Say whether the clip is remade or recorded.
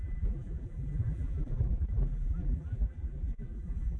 remade